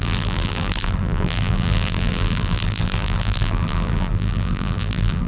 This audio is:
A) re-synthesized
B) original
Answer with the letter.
A